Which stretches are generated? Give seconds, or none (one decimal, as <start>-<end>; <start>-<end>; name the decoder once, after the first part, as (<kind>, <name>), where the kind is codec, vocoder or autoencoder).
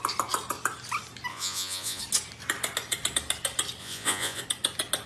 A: 1.3-2.0 (vocoder, Vocos); 3.8-4.4